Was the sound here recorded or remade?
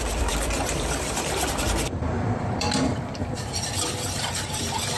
remade